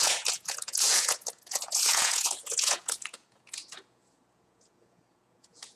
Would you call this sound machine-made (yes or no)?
yes